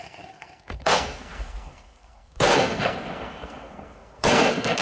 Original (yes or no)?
no